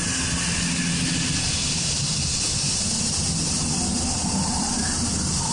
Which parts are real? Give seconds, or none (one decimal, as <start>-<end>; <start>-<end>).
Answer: 0.0-5.5